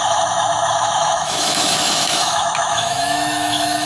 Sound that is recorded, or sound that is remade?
remade